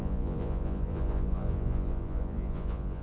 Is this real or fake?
fake